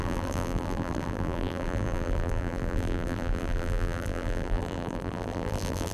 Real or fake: fake